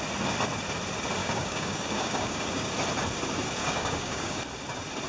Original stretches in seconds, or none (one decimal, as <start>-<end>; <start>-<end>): 0.0-1.2; 2.7-3.6; 4.4-5.1